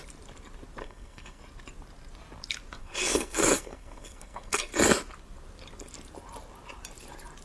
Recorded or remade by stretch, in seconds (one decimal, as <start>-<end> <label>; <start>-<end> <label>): 0.0-0.8 recorded; 0.8-1.4 remade; 1.4-2.8 recorded; 2.8-4.7 remade; 4.7-7.4 recorded